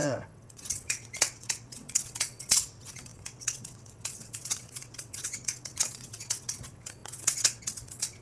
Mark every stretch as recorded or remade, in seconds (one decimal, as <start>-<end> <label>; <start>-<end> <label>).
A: 0.0-8.2 remade